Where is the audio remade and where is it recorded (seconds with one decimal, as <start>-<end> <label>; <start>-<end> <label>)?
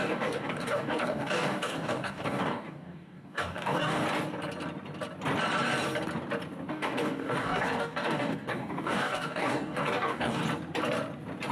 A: 0.0-4.0 remade; 4.0-6.7 recorded; 6.7-10.4 remade; 10.4-11.5 recorded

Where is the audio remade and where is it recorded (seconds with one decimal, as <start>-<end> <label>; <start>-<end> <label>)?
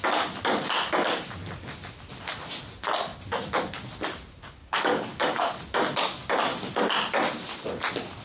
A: 0.0-4.6 recorded; 4.6-5.6 remade; 5.6-8.2 recorded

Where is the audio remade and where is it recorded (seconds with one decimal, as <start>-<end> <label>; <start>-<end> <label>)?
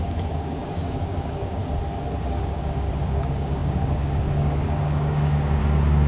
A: 0.0-1.6 remade; 1.6-2.2 recorded; 2.2-6.1 remade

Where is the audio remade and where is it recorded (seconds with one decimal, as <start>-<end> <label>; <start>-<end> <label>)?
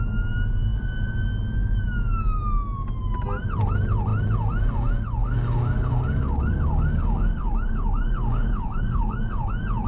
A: 0.0-5.2 recorded; 5.2-9.5 remade; 9.5-9.9 recorded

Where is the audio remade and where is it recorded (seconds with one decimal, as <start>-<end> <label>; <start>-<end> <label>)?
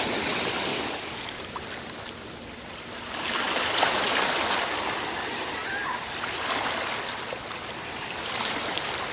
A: 0.0-0.7 recorded; 0.7-1.4 remade; 1.4-9.1 recorded